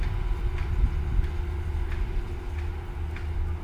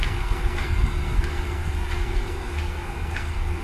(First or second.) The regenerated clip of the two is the second